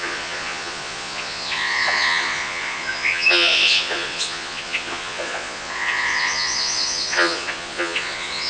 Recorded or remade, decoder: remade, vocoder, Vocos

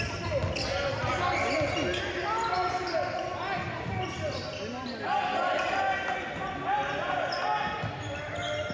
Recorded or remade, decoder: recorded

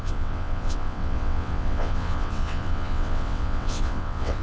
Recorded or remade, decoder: remade, vocoder, WaveNeXt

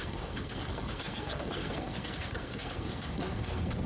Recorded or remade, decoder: remade, codec, SNAC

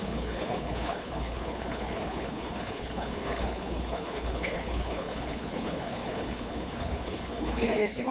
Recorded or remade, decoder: remade, codec, HILCodec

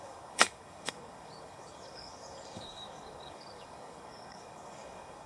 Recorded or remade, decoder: remade, codec, DAC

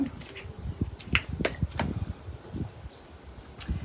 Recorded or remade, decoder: recorded